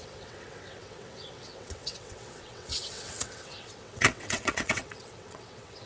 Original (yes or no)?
no